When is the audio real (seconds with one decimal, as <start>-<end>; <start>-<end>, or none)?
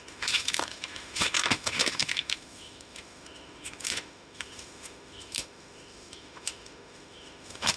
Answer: none